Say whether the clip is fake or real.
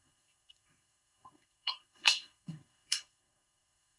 fake